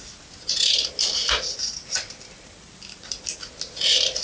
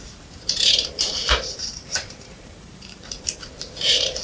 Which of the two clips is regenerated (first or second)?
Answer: second